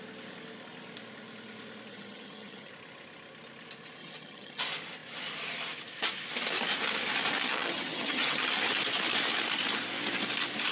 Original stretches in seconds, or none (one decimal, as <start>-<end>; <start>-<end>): 0.0-1.9; 2.7-4.0; 4.6-7.4; 8.5-10.7